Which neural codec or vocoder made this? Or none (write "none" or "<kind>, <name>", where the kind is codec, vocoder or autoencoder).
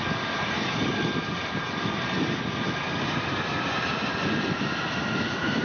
none